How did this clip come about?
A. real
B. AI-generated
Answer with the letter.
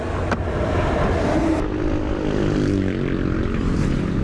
A